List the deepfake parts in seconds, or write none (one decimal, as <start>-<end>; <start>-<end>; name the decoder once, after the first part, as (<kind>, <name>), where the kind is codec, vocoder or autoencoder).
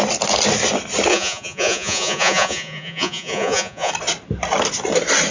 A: 1.1-3.9 (vocoder, Vocos)